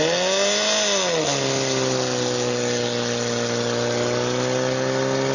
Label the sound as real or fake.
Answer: real